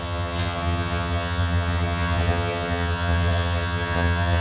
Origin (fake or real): fake